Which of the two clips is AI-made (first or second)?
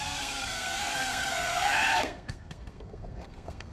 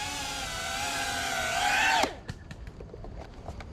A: first